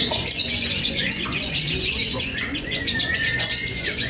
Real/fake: fake